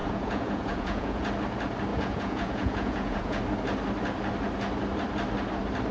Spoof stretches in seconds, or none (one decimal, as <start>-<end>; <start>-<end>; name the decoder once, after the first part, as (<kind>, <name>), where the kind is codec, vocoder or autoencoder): 0.0-1.3 (vocoder, Vocos); 1.9-3.4

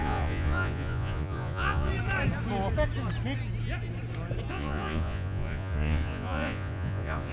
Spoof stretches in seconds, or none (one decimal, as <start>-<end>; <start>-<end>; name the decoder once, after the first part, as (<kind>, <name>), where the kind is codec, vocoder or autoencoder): 0.0-1.9 (vocoder, Vocos); 4.5-7.3

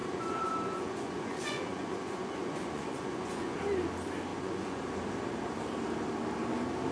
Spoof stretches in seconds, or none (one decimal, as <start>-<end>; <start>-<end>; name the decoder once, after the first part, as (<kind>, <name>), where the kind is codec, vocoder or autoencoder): 0.0-3.6 (vocoder, Vocos); 4.3-4.8